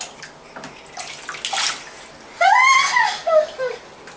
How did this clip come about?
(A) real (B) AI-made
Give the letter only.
A